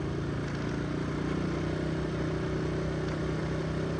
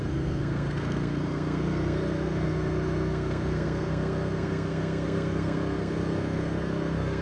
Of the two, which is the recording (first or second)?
first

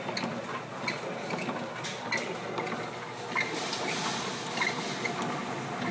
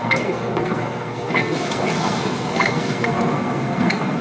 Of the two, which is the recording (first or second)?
first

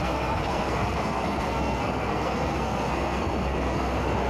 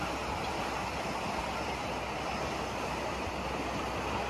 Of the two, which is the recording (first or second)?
second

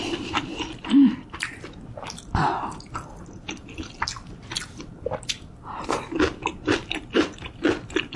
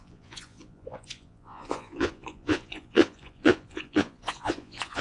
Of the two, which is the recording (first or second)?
first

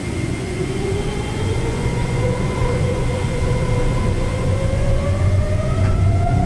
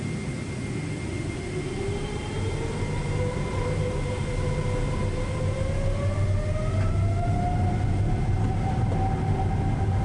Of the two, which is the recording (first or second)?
second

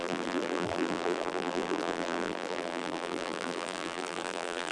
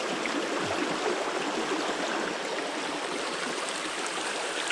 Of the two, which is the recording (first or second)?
second